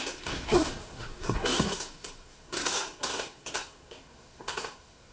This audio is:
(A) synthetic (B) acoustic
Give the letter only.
A